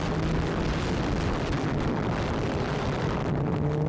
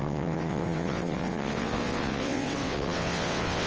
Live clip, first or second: first